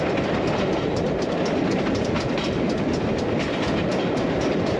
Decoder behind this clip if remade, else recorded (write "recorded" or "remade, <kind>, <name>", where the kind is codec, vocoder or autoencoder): recorded